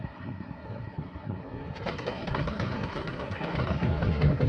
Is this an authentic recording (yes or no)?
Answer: no